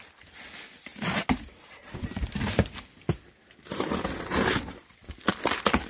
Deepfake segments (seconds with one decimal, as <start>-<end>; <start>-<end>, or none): none